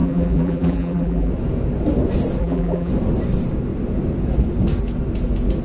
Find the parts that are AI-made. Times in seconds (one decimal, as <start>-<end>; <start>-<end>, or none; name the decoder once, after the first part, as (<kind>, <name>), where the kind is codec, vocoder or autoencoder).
0.0-1.3 (vocoder, BigVGAN v2); 2.4-2.9